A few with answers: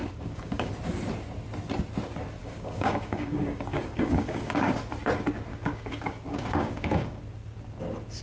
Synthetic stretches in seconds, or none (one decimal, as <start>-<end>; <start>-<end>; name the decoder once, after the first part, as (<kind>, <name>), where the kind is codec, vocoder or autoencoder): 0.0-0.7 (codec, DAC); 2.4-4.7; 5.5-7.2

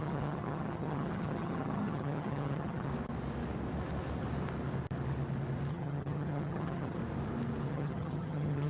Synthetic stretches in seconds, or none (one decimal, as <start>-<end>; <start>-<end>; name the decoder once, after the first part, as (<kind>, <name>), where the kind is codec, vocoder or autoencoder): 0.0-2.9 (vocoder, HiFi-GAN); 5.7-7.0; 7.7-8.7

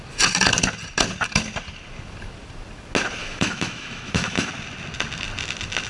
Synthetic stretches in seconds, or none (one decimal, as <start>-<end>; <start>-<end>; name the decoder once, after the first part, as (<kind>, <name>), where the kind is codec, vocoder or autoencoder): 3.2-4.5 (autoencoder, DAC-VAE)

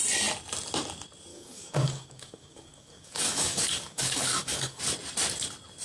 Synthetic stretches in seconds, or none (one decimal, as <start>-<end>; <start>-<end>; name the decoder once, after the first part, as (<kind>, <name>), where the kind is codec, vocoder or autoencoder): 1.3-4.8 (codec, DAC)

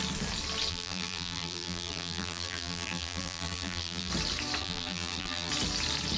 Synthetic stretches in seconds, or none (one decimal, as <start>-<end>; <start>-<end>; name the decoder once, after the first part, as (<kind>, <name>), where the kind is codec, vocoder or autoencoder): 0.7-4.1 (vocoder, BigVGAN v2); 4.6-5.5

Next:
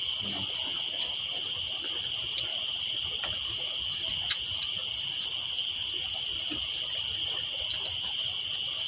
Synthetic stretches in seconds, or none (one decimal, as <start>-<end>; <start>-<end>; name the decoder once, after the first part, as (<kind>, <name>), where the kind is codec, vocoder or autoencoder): none